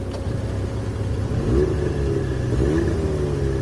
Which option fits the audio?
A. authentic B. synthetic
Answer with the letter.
A